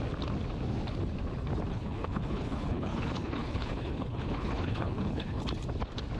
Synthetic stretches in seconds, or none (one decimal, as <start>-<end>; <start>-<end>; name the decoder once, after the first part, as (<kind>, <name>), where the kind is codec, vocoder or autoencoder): 1.7-5.4 (codec, HILCodec)